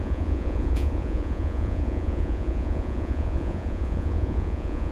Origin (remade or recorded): remade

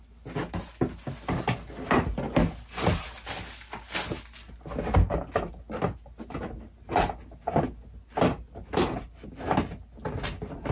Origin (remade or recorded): recorded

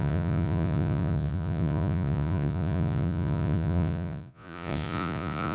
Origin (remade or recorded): remade